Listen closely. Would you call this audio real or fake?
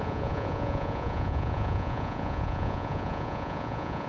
fake